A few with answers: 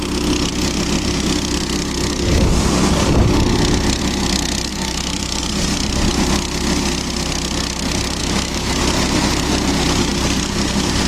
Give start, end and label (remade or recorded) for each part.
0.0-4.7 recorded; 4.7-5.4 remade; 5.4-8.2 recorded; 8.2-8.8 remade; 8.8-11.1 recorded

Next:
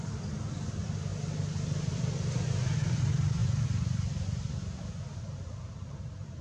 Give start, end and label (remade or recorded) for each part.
0.0-6.4 recorded

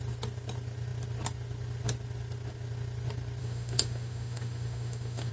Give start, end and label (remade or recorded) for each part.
0.0-3.4 recorded; 3.4-5.3 remade

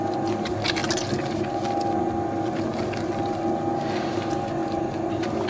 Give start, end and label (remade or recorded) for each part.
0.0-5.5 recorded